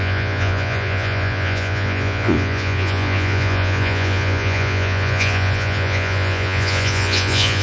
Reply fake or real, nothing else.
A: fake